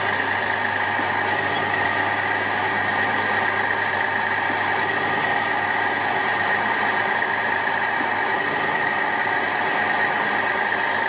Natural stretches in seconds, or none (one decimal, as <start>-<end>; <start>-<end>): 0.0-6.2; 7.7-11.1

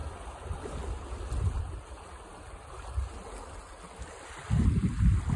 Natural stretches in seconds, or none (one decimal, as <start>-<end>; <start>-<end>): 0.0-5.4

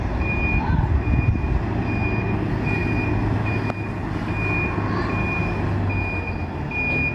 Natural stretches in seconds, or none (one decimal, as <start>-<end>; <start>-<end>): 0.0-7.1